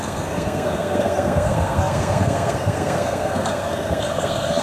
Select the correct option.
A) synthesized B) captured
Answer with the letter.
A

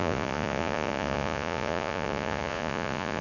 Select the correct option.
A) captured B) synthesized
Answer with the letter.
B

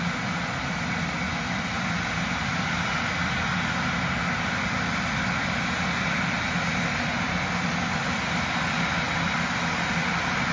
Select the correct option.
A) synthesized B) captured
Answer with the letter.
B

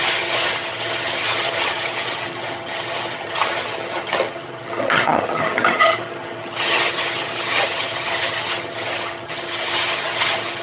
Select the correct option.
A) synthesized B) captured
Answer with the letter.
A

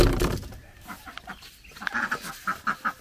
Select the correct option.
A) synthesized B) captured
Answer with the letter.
B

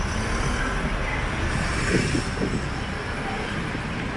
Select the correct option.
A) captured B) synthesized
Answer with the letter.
A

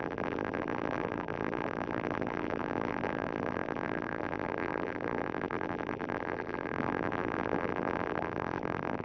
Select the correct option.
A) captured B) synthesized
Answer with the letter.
B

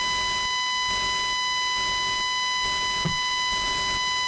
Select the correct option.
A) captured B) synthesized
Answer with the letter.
A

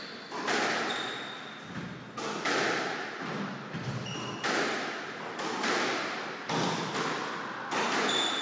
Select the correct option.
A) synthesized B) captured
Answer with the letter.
B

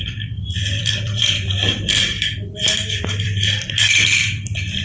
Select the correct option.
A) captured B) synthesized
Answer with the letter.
B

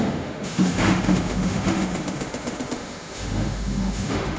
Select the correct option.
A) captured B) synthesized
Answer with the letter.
B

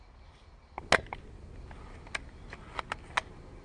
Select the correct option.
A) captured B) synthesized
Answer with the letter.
A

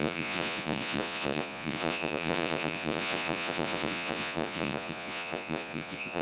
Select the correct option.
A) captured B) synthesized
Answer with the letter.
B